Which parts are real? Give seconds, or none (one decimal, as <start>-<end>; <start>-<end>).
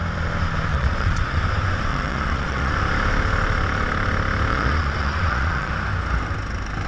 0.0-0.7; 1.4-1.9; 2.7-4.5; 5.7-6.9